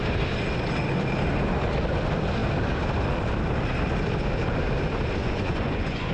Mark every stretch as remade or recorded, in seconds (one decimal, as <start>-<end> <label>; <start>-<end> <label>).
0.0-5.2 recorded; 5.2-6.1 remade